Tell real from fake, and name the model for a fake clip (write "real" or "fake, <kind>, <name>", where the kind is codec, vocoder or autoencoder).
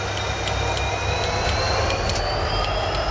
real